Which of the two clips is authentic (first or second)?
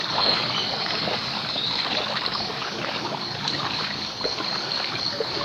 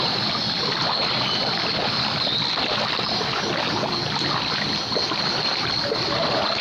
second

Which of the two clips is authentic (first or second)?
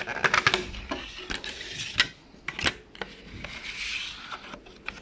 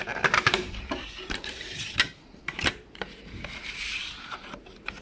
first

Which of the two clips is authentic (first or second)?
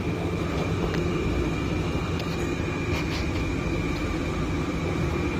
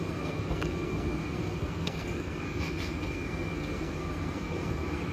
first